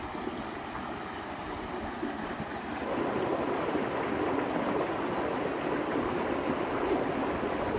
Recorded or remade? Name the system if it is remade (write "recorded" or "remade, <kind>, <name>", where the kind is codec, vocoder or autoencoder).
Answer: recorded